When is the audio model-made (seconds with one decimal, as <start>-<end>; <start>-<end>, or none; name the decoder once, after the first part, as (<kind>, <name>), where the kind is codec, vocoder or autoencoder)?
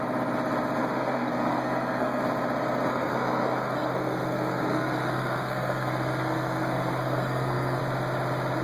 0.8-2.2 (codec, SNAC); 2.9-7.8